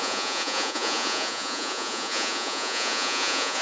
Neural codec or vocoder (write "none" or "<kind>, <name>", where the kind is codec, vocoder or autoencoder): vocoder, Vocos